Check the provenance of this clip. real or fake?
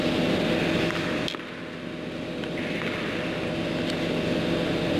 real